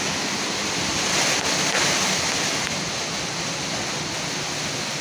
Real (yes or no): yes